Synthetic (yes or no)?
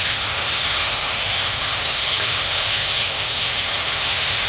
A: yes